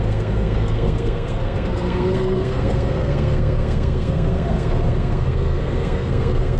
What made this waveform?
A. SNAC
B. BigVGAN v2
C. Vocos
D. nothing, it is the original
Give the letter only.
A